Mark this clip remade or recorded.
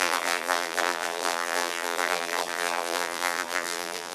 remade